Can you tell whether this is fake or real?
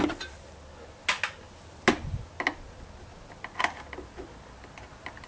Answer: real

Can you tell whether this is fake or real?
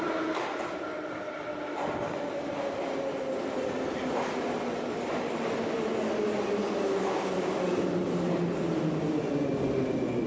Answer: real